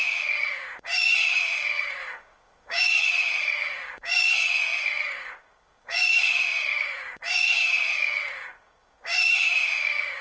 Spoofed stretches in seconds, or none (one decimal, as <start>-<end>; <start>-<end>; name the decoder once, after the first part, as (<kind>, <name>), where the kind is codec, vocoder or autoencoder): 0.0-10.2 (codec, DAC)